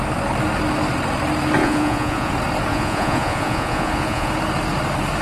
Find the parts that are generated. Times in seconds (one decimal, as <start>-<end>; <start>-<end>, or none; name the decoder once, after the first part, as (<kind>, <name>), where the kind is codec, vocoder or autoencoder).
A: 1.6-2.3 (vocoder, Vocos); 2.7-4.3